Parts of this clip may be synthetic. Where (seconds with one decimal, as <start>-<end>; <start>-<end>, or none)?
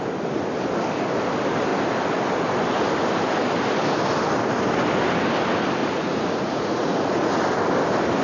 5.8-7.4